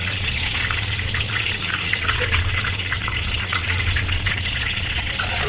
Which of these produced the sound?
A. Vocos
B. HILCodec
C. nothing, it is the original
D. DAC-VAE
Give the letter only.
A